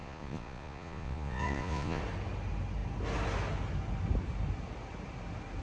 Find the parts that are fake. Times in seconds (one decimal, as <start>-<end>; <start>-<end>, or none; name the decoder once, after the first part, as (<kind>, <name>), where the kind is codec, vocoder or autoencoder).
0.0-2.0 (vocoder, Vocos)